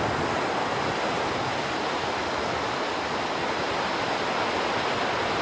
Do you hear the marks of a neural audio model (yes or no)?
no